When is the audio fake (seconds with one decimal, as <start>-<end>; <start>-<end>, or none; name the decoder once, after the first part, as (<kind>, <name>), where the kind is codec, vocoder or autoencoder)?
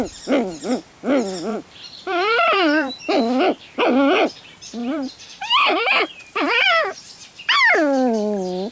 1.5-3.0 (vocoder, BigVGAN v2); 4.8-7.0